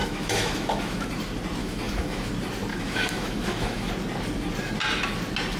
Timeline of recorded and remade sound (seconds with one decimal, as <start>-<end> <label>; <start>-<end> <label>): 0.0-1.1 remade; 1.1-1.6 recorded; 1.6-2.3 remade; 2.3-2.7 recorded; 2.7-3.9 remade; 3.9-5.6 recorded